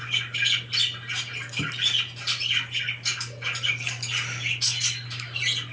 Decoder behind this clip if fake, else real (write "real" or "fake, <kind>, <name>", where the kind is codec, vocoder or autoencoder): real